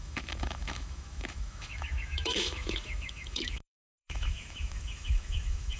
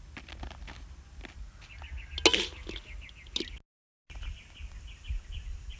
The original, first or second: second